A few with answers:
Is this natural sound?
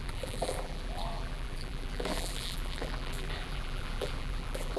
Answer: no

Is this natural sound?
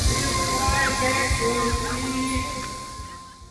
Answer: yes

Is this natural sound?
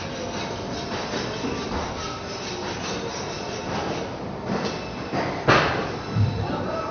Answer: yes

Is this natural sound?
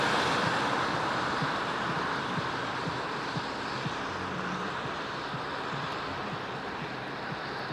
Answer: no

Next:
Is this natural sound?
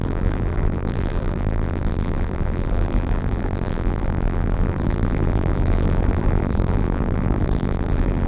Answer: no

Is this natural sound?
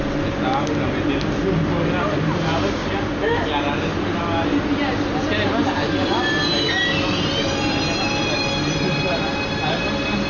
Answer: yes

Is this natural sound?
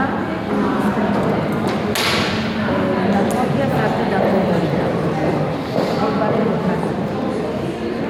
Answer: yes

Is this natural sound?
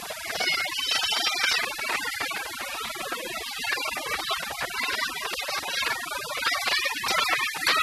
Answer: yes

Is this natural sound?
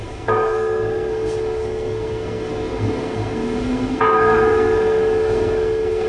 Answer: no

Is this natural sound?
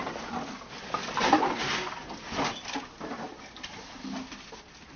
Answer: yes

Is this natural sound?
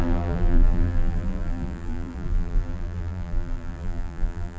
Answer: no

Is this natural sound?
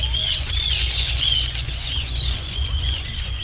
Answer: no